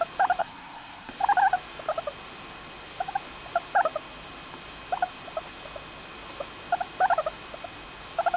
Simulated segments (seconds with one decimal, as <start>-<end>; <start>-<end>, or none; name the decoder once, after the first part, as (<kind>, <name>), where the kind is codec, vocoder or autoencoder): 0.4-1.1 (codec, SNAC)